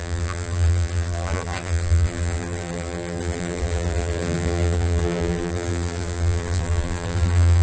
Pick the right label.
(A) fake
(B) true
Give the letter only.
A